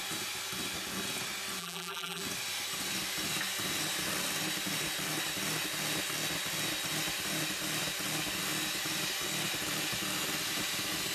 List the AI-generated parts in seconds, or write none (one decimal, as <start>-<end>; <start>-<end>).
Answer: 1.6-2.2